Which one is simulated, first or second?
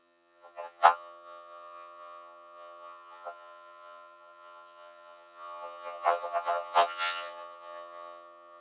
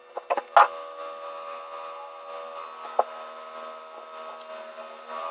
first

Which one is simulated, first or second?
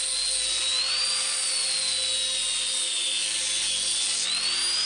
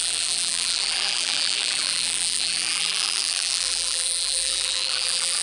second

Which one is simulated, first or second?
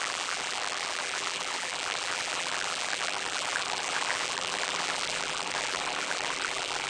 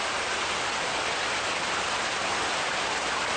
first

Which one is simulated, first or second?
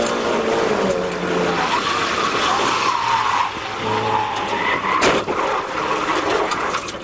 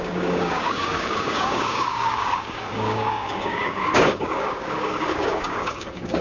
second